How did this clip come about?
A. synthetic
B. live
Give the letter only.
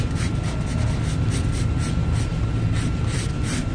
B